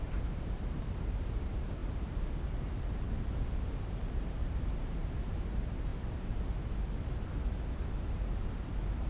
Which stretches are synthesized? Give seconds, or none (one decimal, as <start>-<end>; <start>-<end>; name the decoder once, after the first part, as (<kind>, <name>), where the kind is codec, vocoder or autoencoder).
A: 0.0-5.9 (vocoder, BigVGAN v2); 8.0-9.1